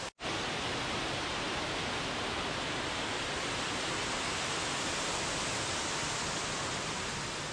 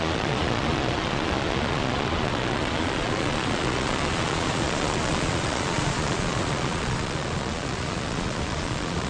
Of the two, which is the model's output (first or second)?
second